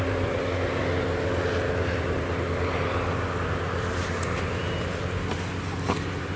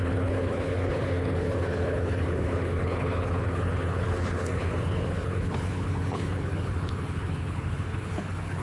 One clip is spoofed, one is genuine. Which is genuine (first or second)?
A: first